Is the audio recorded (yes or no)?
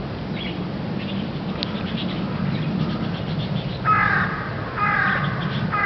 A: yes